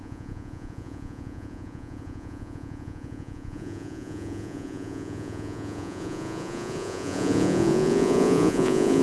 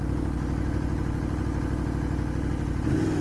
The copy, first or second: first